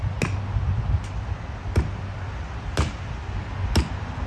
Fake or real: real